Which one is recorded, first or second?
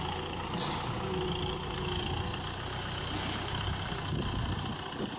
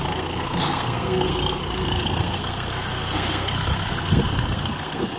first